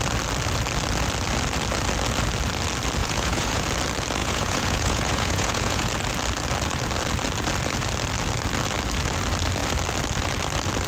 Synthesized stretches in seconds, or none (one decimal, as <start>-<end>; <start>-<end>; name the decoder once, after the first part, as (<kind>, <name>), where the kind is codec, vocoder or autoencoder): 3.0-3.6 (vocoder, Vocos); 4.2-5.9